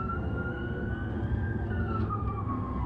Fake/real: fake